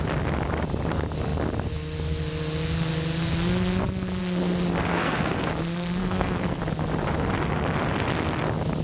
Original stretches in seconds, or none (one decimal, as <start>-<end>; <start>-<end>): 0.0-4.9; 5.5-6.0; 6.6-8.8